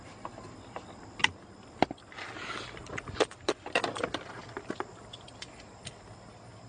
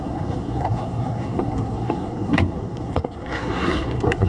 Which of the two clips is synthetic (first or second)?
second